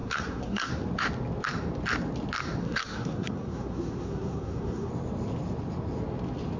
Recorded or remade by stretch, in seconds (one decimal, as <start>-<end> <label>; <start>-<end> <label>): 0.0-0.7 remade; 0.7-2.6 recorded; 2.6-4.9 remade; 4.9-6.6 recorded